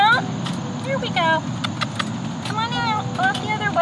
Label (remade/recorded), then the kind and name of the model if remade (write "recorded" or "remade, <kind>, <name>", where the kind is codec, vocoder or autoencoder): recorded